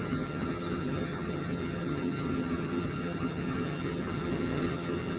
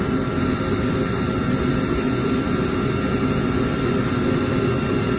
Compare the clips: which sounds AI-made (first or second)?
first